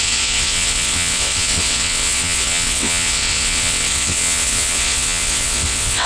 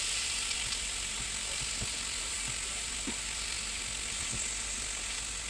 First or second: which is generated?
first